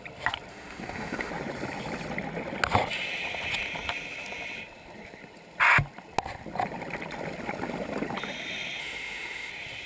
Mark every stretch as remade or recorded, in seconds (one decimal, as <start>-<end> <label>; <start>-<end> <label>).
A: 0.0-0.5 recorded; 0.5-1.3 remade; 1.3-8.8 recorded; 8.8-9.5 remade; 9.5-9.9 recorded